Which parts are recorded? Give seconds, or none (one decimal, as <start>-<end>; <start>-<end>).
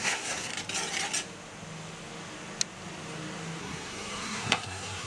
0.5-3.6